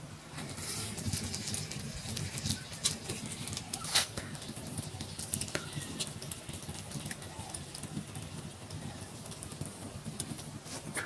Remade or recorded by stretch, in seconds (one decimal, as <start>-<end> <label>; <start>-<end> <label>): 0.0-3.9 recorded; 3.9-4.4 remade; 4.4-11.1 recorded

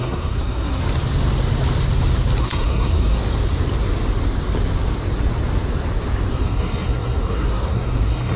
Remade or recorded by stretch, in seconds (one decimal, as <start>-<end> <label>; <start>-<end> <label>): 0.0-0.8 remade; 0.8-2.4 recorded; 2.4-3.2 remade; 3.2-6.3 recorded; 6.3-8.4 remade

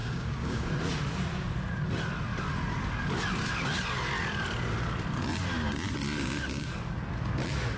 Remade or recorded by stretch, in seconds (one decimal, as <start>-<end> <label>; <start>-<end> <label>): 0.0-0.7 remade; 0.7-7.8 recorded

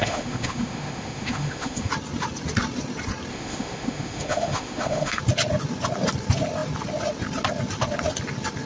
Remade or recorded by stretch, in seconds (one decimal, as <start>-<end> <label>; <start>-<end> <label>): 0.0-1.9 remade; 1.9-3.3 recorded; 3.3-5.2 remade; 5.2-8.7 recorded